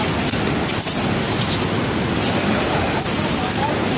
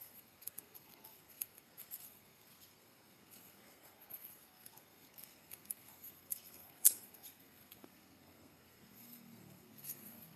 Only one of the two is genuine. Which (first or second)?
first